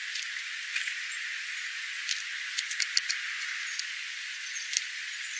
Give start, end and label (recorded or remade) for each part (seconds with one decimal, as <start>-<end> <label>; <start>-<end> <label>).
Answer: 0.0-0.7 recorded; 0.7-5.4 remade